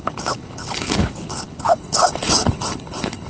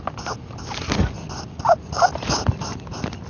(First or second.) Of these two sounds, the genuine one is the second